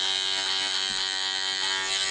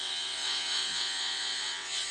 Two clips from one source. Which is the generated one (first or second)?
second